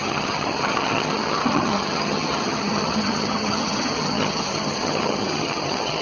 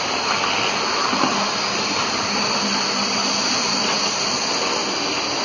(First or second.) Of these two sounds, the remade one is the first